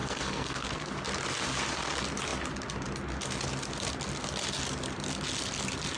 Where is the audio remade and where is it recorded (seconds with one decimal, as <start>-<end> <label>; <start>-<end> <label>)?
0.0-0.9 remade; 0.9-6.0 recorded